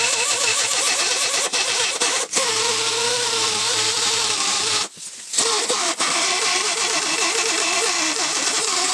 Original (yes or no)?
yes